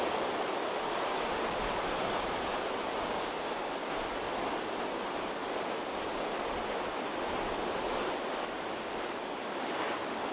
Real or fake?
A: real